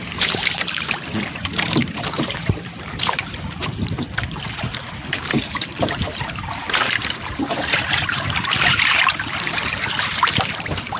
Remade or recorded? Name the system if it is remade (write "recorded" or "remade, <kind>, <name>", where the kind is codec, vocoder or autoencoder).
remade, vocoder, BigVGAN v2